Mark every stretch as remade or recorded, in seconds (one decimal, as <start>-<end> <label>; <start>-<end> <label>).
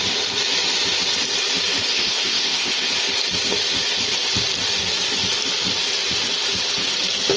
0.0-1.9 recorded; 1.9-2.9 remade; 2.9-7.4 recorded